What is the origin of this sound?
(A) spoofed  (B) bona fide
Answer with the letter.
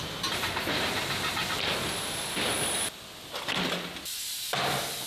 B